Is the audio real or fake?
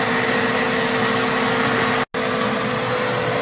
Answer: real